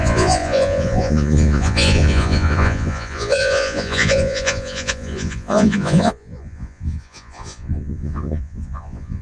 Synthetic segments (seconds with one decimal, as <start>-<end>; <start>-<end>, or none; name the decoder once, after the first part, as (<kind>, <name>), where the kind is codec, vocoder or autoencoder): 0.0-9.2 (vocoder, Vocos)